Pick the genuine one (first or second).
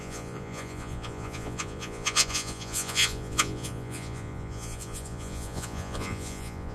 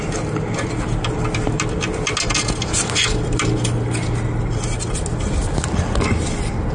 second